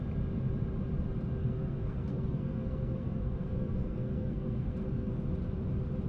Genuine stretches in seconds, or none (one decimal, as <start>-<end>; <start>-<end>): 0.0-1.4; 5.1-6.1